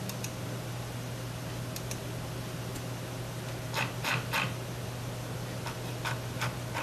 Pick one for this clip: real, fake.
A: fake